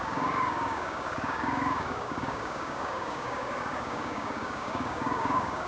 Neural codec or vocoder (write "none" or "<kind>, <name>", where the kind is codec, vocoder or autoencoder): codec, DAC